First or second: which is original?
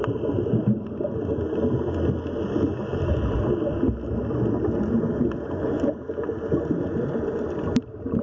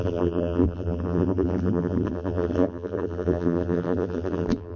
first